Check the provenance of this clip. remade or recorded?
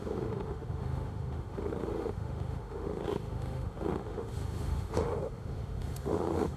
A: remade